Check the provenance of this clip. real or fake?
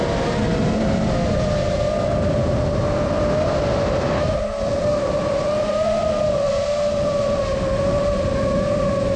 real